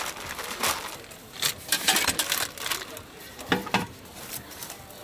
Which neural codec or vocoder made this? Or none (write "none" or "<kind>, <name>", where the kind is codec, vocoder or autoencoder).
none